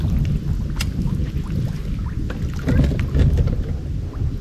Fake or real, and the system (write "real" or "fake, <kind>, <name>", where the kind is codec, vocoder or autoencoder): real